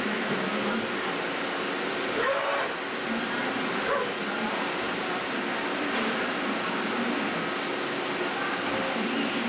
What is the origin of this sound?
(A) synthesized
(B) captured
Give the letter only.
B